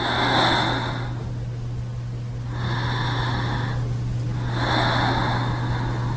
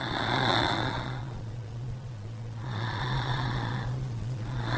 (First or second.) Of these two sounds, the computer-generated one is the second